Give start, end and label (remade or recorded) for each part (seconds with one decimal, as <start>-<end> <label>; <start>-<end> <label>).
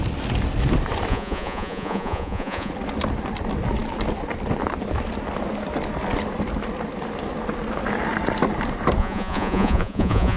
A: 0.0-1.1 recorded; 1.1-2.7 remade; 2.7-9.0 recorded; 9.0-10.4 remade